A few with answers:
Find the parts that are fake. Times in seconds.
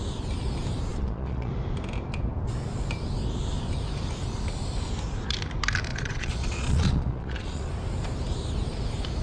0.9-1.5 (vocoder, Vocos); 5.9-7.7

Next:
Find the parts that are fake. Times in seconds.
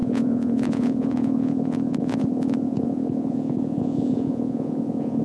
0.0-5.2 (vocoder, Vocos)